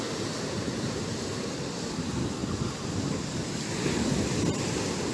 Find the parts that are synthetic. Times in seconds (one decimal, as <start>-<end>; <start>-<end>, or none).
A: none